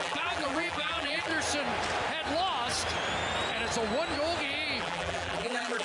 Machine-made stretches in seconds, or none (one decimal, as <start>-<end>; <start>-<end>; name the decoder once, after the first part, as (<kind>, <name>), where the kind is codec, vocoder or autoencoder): 0.0-1.3 (vocoder, BigVGAN v2); 4.8-5.8